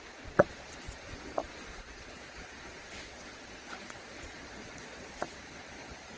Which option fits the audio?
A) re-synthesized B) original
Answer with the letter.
A